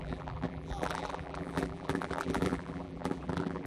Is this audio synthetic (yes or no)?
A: yes